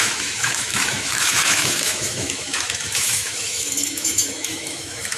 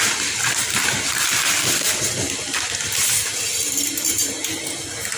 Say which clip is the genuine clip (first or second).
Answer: second